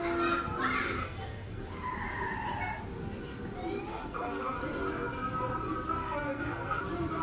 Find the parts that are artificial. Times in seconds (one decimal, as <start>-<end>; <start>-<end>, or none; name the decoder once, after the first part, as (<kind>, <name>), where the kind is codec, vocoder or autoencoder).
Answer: 1.0-1.6 (codec, SNAC); 3.9-4.6; 6.0-6.8